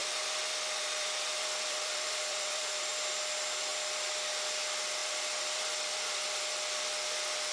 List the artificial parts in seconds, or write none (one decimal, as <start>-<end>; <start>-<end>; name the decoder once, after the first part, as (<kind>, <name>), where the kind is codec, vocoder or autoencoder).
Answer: 0.0-2.9 (vocoder, BigVGAN v2); 5.0-6.4